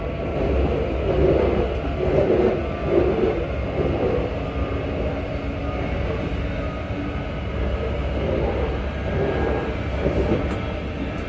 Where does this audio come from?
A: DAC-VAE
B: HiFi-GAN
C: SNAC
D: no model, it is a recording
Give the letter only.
D